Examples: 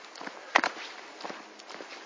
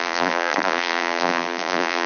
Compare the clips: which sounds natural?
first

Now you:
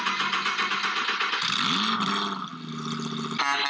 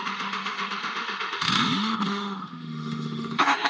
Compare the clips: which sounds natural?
first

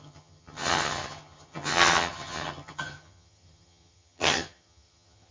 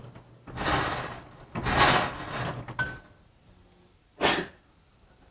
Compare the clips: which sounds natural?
second